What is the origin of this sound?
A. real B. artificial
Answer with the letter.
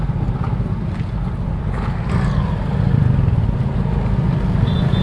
A